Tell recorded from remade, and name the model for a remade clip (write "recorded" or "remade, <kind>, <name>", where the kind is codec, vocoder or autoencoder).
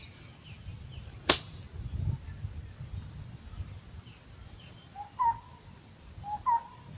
recorded